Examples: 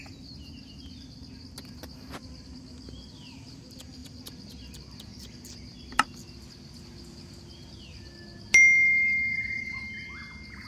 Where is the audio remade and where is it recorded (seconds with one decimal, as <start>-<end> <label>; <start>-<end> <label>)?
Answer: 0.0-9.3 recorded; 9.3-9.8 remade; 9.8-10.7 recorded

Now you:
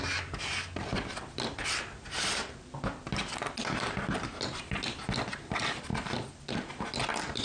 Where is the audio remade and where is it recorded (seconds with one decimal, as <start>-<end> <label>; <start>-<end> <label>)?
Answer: 0.0-5.9 recorded; 5.9-6.7 remade; 6.7-7.4 recorded

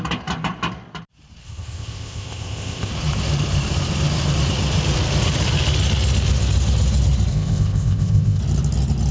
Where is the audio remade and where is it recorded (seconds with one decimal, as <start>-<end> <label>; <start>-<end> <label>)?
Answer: 0.0-1.4 recorded; 1.4-2.9 remade; 2.9-7.3 recorded; 7.3-8.4 remade; 8.4-9.1 recorded

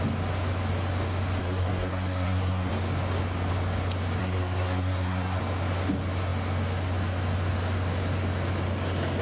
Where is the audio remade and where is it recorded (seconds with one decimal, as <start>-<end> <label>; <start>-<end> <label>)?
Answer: 0.0-1.4 recorded; 1.4-2.7 remade; 2.7-4.2 recorded; 4.2-5.4 remade; 5.4-9.2 recorded

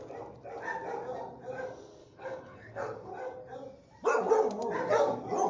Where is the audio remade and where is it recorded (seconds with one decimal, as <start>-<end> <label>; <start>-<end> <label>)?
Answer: 0.0-2.0 recorded; 2.0-3.1 remade; 3.1-5.5 recorded

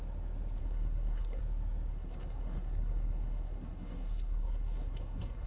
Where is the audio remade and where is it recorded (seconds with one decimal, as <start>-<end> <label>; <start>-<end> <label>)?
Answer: 0.0-0.6 recorded; 0.6-1.4 remade; 1.4-1.9 recorded; 1.9-5.5 remade

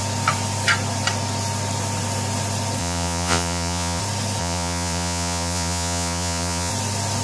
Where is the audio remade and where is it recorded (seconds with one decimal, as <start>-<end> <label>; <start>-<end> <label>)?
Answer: 0.0-2.8 recorded; 2.8-4.0 remade; 4.0-4.4 recorded; 4.4-6.7 remade; 6.7-7.2 recorded

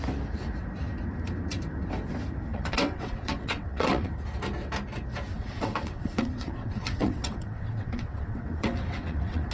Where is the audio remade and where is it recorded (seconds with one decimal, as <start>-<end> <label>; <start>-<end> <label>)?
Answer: 0.0-2.5 recorded; 2.5-4.1 remade; 4.1-5.3 recorded; 5.3-9.5 remade